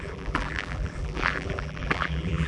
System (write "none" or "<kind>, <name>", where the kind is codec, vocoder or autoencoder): vocoder, BigVGAN v2